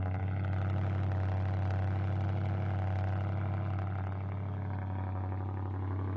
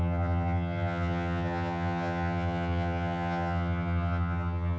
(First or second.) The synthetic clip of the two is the second